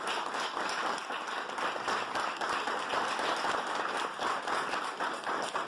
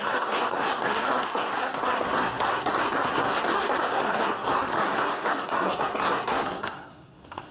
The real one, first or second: first